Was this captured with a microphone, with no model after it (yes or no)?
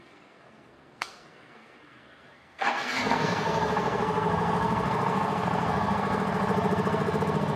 no